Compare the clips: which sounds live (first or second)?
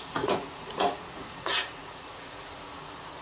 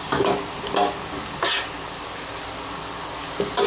second